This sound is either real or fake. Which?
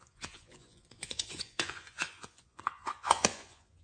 fake